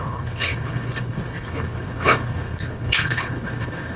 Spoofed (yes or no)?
yes